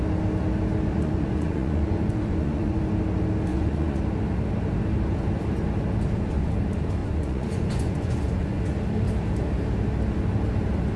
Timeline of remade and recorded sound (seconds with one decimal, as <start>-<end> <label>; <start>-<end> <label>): 0.0-0.9 recorded; 0.9-2.8 remade; 2.8-3.5 recorded; 3.5-4.0 remade; 4.0-7.0 recorded; 7.0-8.6 remade; 8.6-11.0 recorded